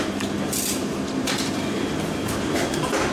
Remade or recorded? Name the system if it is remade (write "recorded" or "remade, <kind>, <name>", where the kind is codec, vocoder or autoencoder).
recorded